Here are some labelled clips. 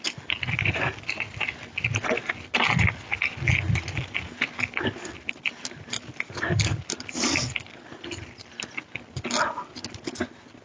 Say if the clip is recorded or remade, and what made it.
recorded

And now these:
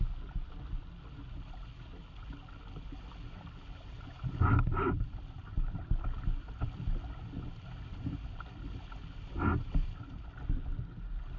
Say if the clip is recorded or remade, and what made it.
recorded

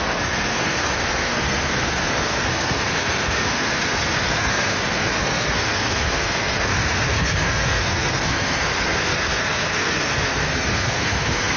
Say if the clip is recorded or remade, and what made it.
remade, codec, SNAC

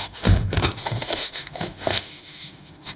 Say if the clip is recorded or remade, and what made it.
remade, autoencoder, DAC-VAE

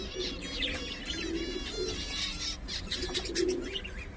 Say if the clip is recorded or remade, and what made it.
recorded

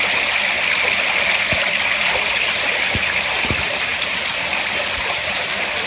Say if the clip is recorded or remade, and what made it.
recorded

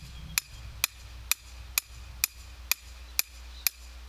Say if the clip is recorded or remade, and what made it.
recorded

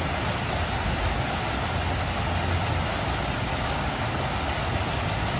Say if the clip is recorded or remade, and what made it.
recorded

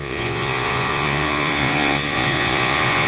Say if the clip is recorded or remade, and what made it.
remade, vocoder, Vocos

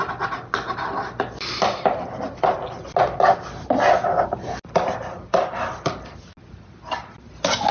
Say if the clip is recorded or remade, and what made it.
recorded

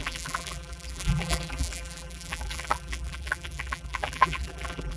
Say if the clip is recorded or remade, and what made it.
remade, vocoder, BigVGAN v2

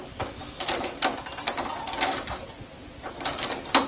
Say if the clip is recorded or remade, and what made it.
recorded